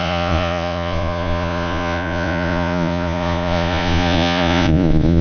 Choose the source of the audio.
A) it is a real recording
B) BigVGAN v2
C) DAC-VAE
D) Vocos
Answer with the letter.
D